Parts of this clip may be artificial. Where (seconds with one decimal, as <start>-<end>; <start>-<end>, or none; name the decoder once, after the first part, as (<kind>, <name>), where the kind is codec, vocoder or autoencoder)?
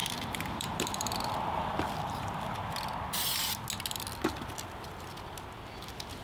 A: 0.0-2.7 (vocoder, BigVGAN v2)